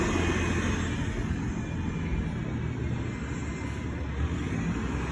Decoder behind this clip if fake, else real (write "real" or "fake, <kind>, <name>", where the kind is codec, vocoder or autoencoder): real